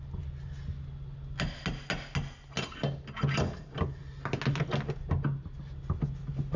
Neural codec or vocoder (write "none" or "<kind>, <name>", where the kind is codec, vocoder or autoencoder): none